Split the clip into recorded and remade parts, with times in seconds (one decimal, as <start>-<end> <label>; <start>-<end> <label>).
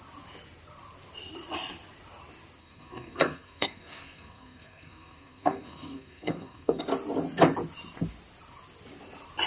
0.0-2.6 recorded; 2.6-6.8 remade; 6.8-9.5 recorded